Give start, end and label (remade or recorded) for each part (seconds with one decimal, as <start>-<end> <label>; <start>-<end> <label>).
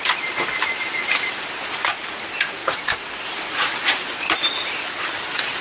0.0-5.6 recorded